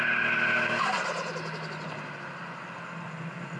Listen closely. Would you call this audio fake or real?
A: real